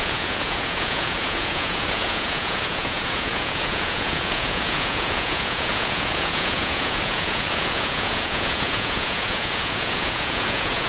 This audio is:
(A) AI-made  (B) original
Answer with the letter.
A